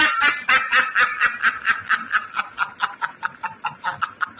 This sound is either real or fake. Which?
real